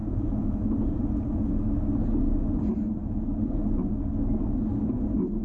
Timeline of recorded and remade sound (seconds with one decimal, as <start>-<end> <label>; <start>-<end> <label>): 0.0-1.0 remade; 1.0-5.4 recorded